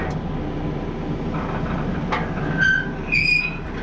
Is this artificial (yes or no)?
no